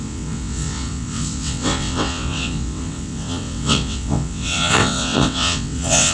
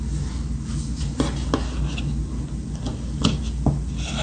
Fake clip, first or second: first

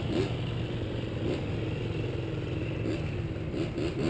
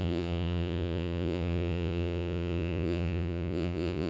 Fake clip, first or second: second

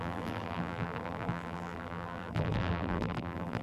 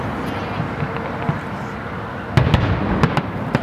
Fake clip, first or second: first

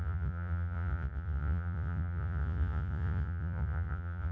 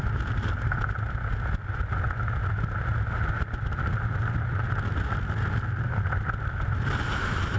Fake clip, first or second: first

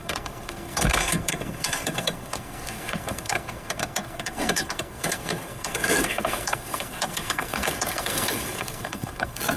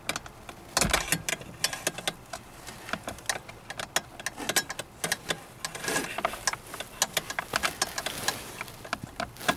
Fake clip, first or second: first